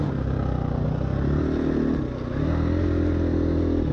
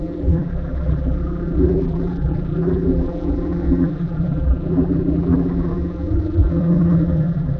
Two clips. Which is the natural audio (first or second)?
first